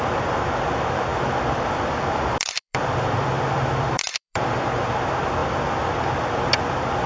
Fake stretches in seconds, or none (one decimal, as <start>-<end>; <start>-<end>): 1.1-4.6